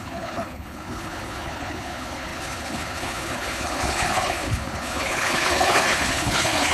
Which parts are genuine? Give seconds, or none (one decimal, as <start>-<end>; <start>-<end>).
none